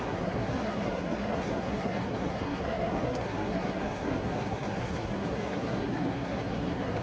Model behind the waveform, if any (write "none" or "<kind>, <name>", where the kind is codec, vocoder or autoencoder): codec, SNAC